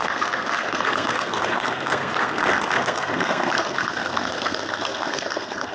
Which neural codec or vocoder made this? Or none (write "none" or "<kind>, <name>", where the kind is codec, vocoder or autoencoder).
codec, SNAC